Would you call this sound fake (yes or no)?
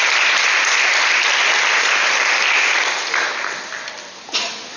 no